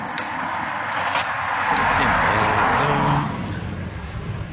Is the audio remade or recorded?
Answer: recorded